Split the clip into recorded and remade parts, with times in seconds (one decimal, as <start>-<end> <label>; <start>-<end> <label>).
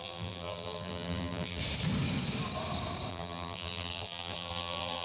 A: 0.0-1.6 remade; 1.6-3.1 recorded; 3.1-5.0 remade